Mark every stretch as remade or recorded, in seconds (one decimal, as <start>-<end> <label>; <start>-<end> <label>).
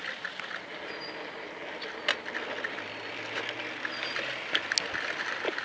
0.0-5.6 recorded